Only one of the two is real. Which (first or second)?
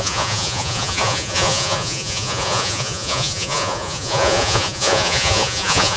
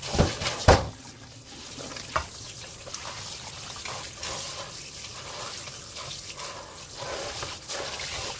second